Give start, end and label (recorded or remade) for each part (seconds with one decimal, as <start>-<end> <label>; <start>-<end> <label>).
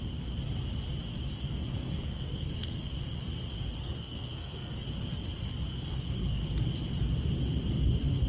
0.0-1.6 recorded; 1.6-2.9 remade; 2.9-3.8 recorded; 3.8-4.8 remade; 4.8-5.7 recorded; 5.7-6.4 remade; 6.4-8.3 recorded